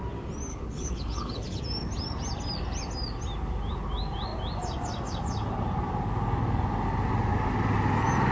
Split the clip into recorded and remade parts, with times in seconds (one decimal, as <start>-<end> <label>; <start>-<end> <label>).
0.0-0.5 recorded; 0.5-1.6 remade; 1.6-8.3 recorded

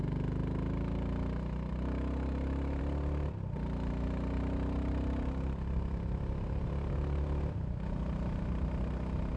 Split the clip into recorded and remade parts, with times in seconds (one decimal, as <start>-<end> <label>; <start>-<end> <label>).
0.0-9.4 recorded

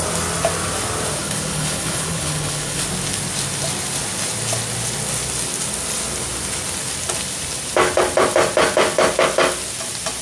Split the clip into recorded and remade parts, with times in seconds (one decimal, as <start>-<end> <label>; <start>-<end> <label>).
0.0-1.2 recorded; 1.2-2.8 remade; 2.8-10.2 recorded

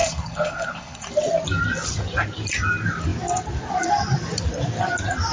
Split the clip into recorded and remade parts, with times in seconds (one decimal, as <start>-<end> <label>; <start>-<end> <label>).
0.0-1.1 remade; 1.1-5.3 recorded

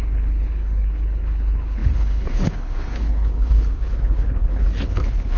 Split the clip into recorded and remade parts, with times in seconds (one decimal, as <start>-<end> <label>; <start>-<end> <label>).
0.0-5.4 remade

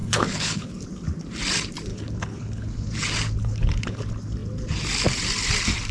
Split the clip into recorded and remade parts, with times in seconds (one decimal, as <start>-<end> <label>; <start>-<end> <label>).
0.0-0.7 remade; 0.7-1.9 recorded; 1.9-2.9 remade; 2.9-3.4 recorded; 3.4-4.0 remade; 4.0-5.9 recorded

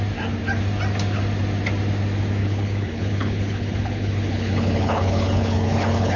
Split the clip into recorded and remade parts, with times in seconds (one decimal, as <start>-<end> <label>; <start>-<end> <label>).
0.0-2.4 recorded; 2.4-6.2 remade